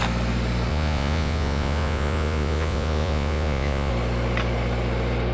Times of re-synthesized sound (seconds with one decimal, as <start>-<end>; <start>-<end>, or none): 0.7-3.9